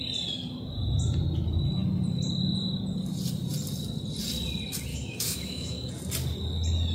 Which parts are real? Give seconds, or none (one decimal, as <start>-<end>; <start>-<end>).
0.0-4.9; 5.9-6.9